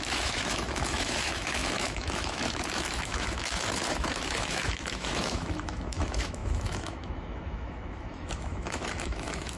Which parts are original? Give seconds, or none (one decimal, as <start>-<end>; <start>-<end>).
none